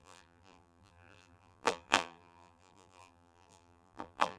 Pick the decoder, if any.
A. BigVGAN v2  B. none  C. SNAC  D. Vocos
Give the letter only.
A